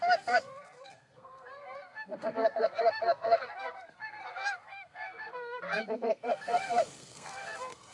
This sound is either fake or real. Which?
fake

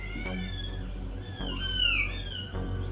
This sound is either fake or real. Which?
real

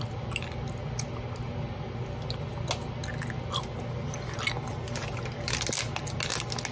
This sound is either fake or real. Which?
real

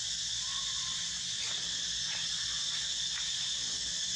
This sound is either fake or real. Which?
real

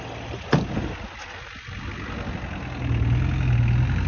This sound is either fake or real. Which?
real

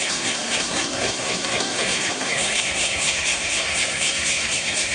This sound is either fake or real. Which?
fake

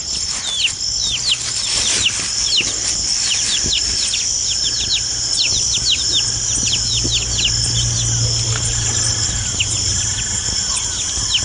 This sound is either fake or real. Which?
real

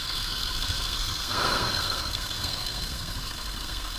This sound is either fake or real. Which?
fake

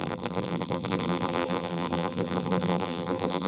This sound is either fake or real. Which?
fake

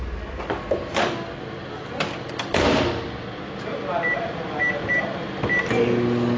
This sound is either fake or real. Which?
real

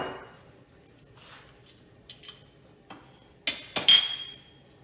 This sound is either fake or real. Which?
real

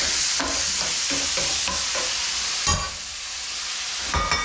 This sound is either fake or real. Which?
real